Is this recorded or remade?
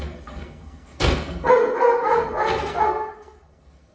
remade